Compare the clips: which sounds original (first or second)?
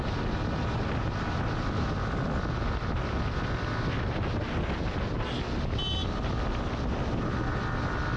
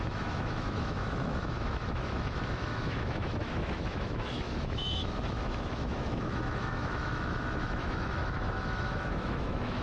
first